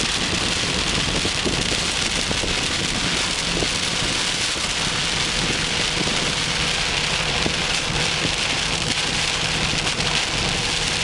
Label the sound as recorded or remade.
recorded